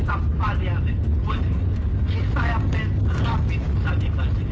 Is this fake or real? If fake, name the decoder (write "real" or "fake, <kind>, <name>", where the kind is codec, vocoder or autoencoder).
real